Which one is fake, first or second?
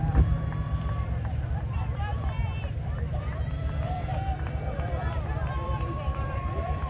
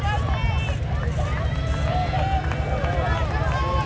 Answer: first